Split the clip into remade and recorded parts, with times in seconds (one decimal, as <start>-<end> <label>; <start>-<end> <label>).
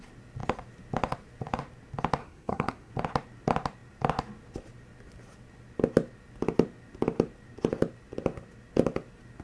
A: 0.0-2.2 recorded; 2.2-2.9 remade; 2.9-9.4 recorded